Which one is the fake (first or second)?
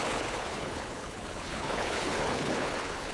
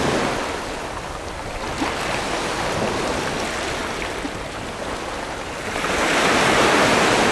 first